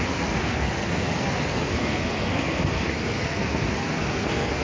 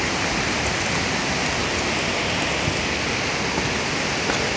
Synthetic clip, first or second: first